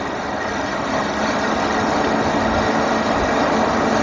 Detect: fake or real real